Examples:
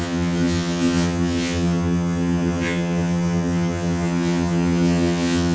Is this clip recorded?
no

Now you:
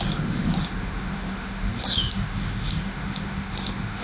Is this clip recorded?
no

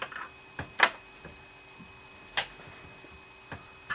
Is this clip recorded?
yes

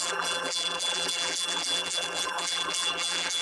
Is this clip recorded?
no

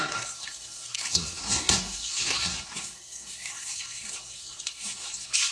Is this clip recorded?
no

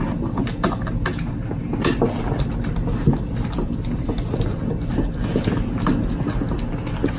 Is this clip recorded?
yes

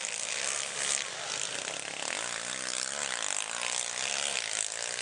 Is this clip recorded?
yes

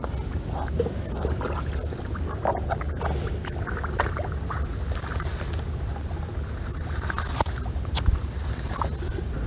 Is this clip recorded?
yes